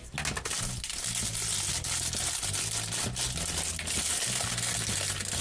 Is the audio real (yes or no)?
yes